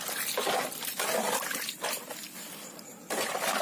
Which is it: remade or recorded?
recorded